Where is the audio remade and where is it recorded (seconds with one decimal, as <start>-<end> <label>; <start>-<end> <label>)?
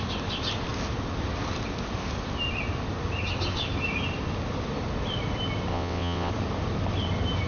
0.0-5.7 recorded; 5.7-6.3 remade; 6.3-7.5 recorded